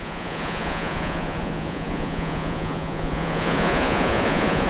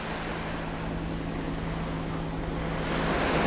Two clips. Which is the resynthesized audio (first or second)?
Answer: first